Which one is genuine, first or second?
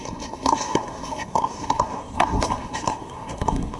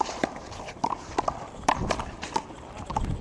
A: second